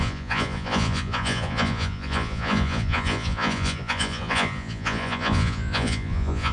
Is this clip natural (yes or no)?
no